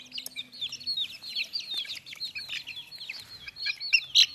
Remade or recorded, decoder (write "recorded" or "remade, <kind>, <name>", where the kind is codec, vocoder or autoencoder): recorded